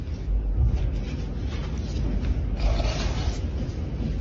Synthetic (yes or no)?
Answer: no